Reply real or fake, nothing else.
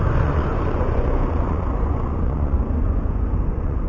fake